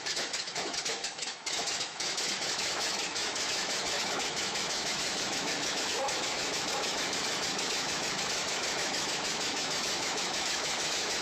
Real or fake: fake